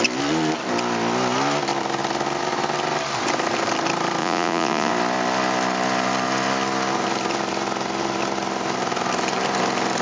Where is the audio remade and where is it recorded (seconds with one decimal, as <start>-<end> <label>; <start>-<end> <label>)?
0.0-4.2 recorded; 4.2-4.9 remade; 4.9-10.0 recorded